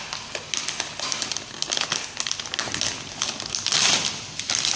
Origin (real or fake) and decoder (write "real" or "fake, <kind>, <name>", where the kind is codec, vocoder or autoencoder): real